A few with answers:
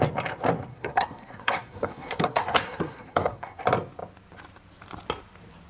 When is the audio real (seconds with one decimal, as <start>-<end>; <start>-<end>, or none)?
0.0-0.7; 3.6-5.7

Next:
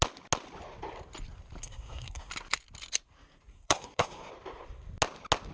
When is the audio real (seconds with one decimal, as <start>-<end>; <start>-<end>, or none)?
0.0-1.6; 2.3-3.5; 4.3-5.5

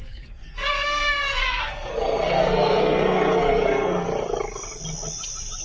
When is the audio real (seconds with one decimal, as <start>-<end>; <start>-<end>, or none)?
4.1-5.6